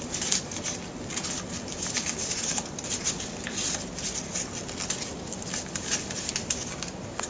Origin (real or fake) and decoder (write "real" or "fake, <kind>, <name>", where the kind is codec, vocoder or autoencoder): real